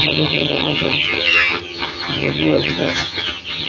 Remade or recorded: remade